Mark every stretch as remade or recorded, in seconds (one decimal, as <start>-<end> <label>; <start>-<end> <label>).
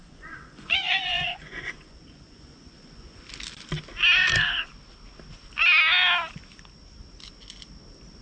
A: 0.0-3.2 remade; 3.2-8.2 recorded